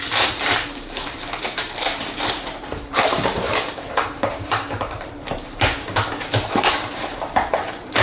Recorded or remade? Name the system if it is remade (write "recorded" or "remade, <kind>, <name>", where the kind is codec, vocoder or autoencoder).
remade, vocoder, BigVGAN v2